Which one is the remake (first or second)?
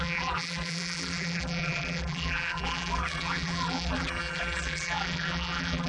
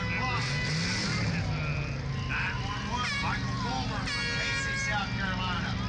first